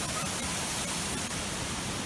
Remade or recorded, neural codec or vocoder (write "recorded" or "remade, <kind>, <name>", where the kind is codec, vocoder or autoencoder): recorded